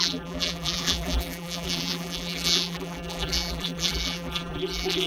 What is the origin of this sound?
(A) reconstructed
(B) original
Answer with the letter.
A